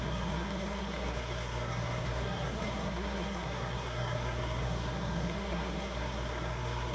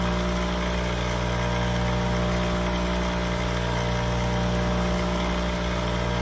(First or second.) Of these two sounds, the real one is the second